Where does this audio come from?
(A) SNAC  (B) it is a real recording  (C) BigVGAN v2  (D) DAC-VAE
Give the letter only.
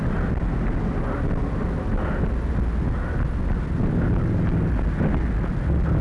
B